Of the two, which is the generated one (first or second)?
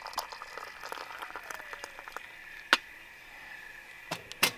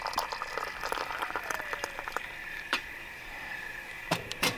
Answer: second